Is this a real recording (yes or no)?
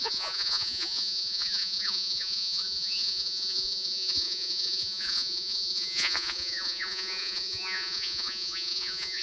no